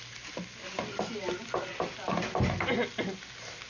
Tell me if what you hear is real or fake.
real